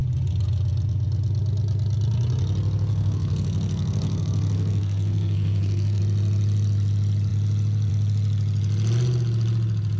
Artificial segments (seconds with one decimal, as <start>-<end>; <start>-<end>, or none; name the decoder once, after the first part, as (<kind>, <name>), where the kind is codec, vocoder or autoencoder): 2.9-6.0 (codec, SNAC)